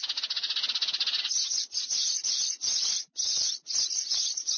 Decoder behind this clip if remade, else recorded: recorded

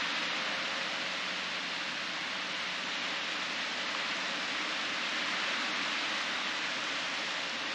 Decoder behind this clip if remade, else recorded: recorded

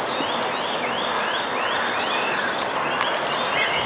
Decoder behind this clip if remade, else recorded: recorded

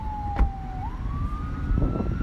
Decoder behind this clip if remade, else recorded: recorded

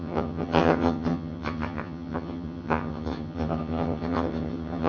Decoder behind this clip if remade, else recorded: remade, vocoder, HiFi-GAN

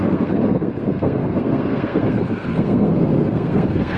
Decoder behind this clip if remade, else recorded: remade, codec, SNAC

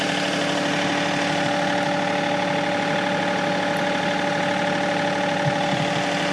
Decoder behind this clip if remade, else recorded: recorded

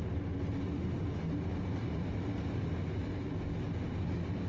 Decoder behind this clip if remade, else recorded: recorded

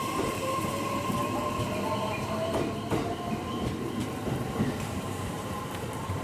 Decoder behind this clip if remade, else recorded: remade, vocoder, BigVGAN v2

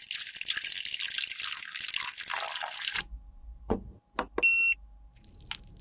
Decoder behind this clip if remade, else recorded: recorded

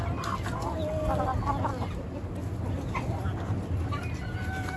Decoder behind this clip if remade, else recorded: recorded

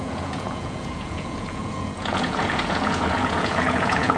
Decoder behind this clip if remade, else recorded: remade, vocoder, Vocos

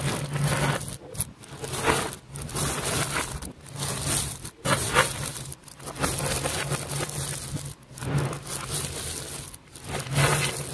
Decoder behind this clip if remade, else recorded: recorded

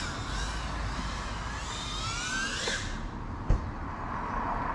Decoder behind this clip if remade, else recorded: recorded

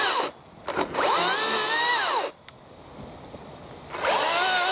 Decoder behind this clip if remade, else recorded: recorded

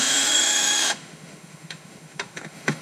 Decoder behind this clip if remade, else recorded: remade, autoencoder, DAC-VAE